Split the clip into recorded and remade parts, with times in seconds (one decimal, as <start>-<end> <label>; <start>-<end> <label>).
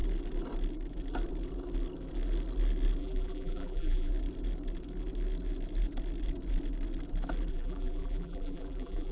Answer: 0.0-3.0 recorded; 3.0-4.1 remade; 4.1-7.5 recorded; 7.5-9.1 remade